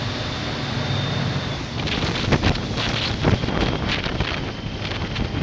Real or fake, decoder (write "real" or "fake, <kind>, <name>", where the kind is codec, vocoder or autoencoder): real